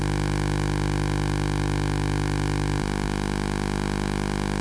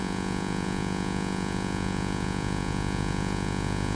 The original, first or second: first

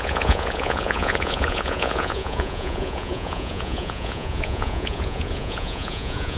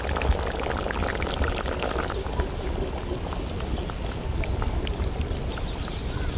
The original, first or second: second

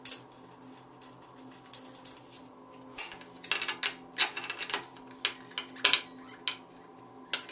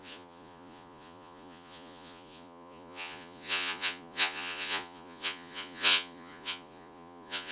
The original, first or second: first